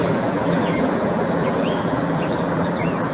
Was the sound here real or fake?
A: fake